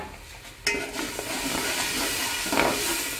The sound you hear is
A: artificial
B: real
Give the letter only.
B